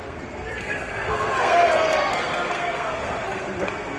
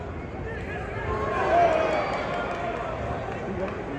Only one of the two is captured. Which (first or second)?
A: second